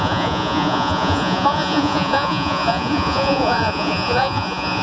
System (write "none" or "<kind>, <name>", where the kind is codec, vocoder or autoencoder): vocoder, Vocos